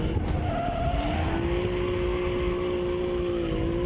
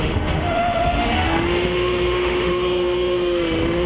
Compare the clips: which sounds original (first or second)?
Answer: first